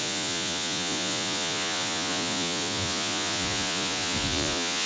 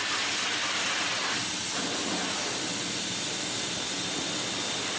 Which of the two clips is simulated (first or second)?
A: first